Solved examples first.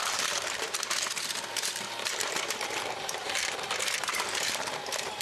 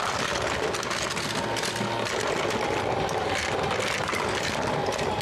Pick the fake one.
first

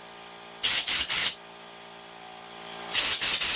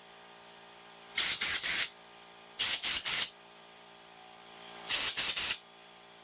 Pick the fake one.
second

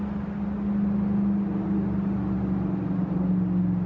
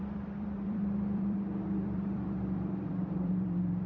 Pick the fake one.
second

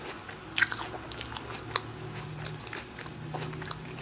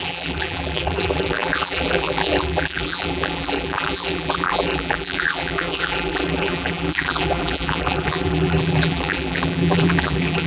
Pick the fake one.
second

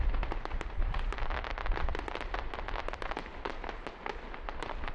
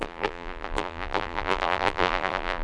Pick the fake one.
second